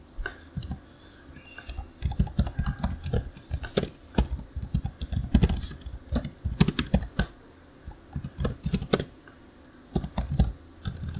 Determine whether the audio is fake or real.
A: real